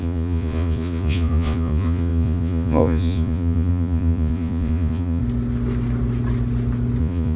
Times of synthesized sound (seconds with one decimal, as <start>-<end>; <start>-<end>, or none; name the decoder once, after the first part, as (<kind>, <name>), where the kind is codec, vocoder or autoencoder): 0.0-5.2 (vocoder, Vocos); 7.0-7.4